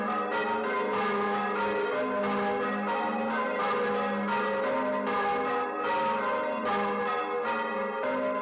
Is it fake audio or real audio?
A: real